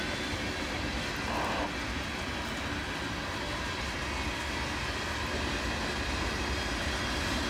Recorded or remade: recorded